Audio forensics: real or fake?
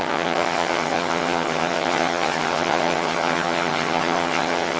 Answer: fake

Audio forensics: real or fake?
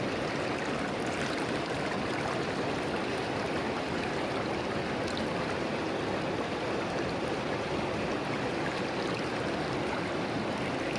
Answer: real